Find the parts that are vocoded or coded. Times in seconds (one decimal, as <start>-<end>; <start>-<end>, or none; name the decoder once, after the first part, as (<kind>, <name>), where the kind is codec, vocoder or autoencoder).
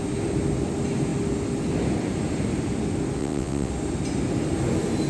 3.2-3.7 (vocoder, WaveNeXt)